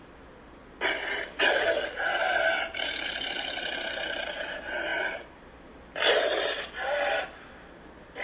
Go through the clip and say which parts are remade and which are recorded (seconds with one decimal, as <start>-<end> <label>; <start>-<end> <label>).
0.0-0.6 remade; 0.6-2.3 recorded; 2.3-8.2 remade